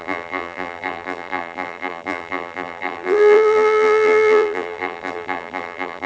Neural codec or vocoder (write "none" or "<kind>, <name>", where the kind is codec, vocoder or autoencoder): vocoder, BigVGAN v2